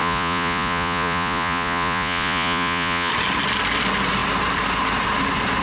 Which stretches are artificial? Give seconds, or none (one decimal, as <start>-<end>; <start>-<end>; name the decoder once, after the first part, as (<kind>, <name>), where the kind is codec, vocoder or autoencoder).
0.0-3.1 (vocoder, Vocos)